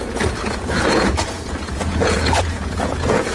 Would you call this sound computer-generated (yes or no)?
yes